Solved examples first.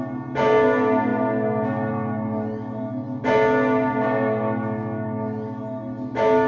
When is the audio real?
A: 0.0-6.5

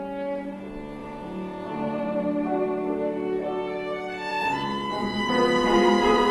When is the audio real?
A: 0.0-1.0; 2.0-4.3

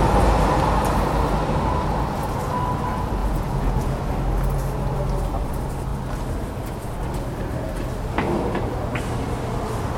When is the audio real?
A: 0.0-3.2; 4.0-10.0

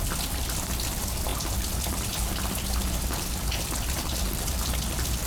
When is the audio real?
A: 0.0-5.3

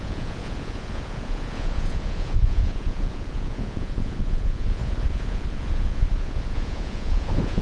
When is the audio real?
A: none